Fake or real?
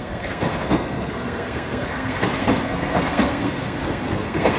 fake